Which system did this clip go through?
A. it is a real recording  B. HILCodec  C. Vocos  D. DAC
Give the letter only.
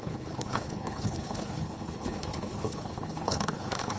B